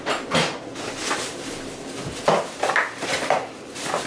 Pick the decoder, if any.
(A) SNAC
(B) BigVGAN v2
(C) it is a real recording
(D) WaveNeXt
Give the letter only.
C